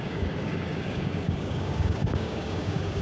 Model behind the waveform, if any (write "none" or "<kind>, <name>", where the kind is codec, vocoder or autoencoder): codec, DAC